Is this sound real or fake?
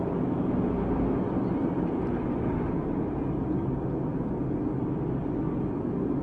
real